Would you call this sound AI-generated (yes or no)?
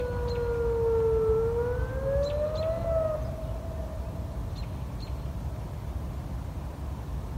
no